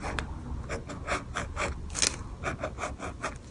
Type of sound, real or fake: real